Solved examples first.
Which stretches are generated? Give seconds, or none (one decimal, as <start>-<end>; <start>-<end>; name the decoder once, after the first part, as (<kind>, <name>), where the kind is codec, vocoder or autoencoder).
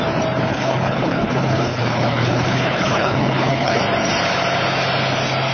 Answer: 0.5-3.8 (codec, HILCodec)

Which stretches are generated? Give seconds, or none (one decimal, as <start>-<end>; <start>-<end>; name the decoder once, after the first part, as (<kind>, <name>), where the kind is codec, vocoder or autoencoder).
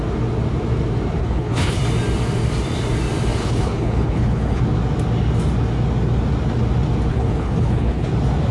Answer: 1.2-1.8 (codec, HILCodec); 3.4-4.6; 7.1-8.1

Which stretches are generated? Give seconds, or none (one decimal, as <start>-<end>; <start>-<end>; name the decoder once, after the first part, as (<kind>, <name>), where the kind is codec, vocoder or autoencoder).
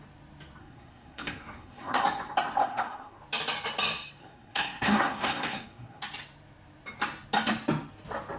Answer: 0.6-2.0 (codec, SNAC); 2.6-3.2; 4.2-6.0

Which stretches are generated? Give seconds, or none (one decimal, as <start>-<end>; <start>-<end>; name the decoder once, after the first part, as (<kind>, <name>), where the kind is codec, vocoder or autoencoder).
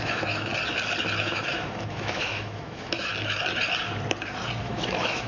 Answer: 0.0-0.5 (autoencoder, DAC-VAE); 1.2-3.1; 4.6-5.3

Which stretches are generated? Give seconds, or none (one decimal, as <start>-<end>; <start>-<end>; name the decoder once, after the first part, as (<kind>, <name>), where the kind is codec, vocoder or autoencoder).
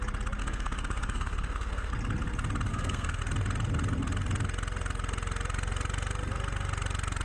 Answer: 0.4-1.9 (codec, SNAC); 2.7-3.2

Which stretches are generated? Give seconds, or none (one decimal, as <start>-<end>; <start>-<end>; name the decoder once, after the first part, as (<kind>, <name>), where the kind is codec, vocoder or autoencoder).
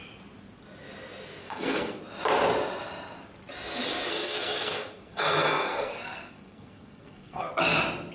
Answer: 1.4-2.0 (codec, SNAC); 4.1-7.5